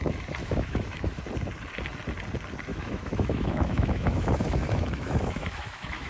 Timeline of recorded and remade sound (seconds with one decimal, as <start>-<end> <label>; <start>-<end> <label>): 0.0-0.4 recorded; 0.4-1.2 remade; 1.2-2.7 recorded; 2.7-6.1 remade